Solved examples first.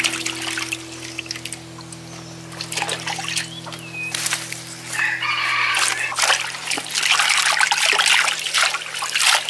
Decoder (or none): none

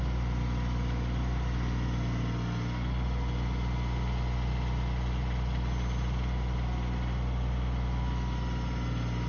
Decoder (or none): none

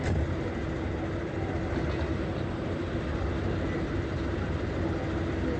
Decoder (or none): none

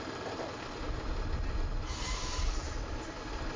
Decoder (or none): none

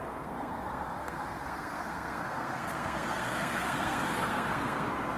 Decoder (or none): codec, SNAC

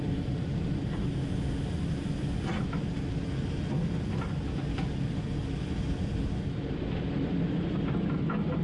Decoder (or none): none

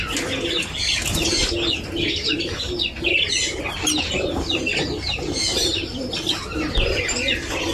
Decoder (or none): none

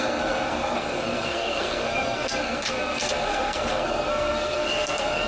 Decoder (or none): codec, SNAC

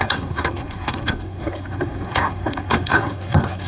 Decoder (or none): codec, SNAC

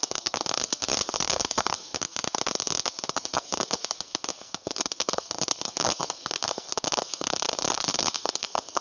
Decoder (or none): codec, SNAC